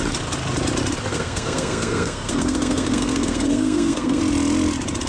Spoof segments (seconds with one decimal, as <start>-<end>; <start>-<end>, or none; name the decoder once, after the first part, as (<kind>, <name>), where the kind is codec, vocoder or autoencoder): 1.1-4.2 (codec, SNAC)